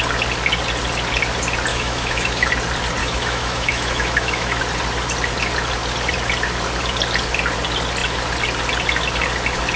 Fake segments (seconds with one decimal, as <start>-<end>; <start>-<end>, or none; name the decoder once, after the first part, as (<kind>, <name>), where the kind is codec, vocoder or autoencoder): 1.7-2.5 (autoencoder, DAC-VAE); 3.0-4.6